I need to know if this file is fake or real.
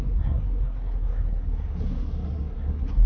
fake